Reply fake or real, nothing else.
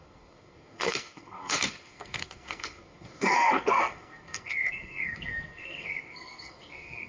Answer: fake